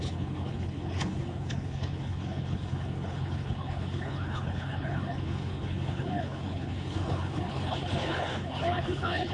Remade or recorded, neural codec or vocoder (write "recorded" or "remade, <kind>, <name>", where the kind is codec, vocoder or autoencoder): remade, codec, HILCodec